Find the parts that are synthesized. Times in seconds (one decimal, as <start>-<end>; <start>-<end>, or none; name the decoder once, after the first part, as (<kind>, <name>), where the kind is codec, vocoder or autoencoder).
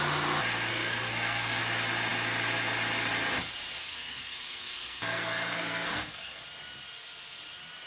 0.7-1.6 (codec, SNAC); 3.8-6.4